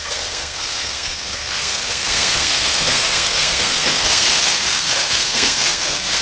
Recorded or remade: remade